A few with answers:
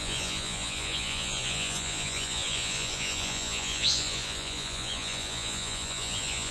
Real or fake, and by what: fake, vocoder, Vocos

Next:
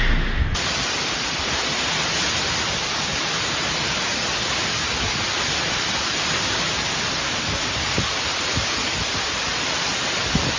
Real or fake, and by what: real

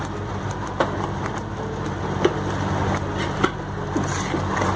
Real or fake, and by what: real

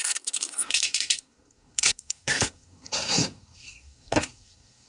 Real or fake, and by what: fake, codec, SNAC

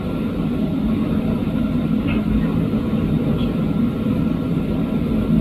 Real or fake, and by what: real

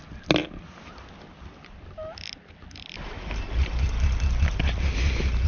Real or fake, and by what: real